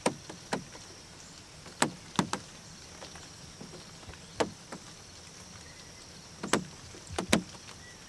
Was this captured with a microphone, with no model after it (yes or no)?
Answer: yes